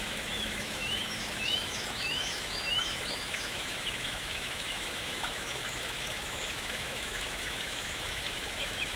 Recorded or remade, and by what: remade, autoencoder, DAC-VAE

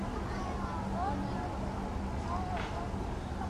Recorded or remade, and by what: recorded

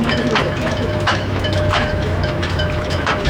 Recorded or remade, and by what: remade, autoencoder, DAC-VAE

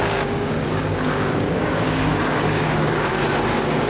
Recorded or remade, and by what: remade, codec, DAC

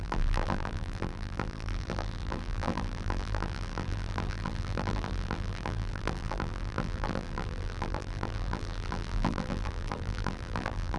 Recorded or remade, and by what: remade, vocoder, BigVGAN v2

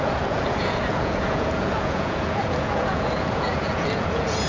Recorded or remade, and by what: remade, vocoder, Vocos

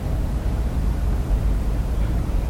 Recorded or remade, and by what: remade, vocoder, BigVGAN v2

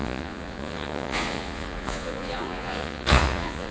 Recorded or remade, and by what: remade, vocoder, Vocos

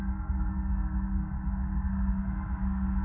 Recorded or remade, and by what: remade, codec, SNAC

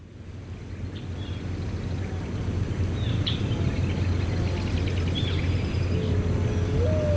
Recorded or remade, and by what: recorded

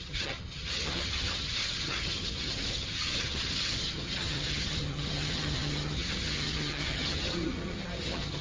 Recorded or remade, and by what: remade, vocoder, HiFi-GAN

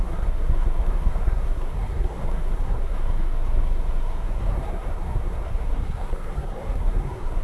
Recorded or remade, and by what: remade, codec, SNAC